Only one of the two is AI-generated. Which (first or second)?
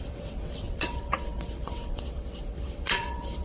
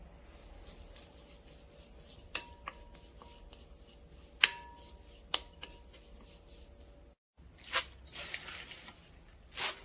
first